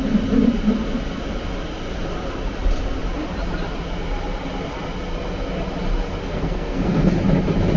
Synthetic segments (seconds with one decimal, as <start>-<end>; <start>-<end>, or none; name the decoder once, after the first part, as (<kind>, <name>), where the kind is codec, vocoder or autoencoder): 6.2-7.1 (codec, SNAC)